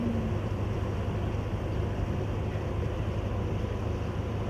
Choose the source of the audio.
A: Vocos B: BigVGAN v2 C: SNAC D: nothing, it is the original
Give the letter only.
D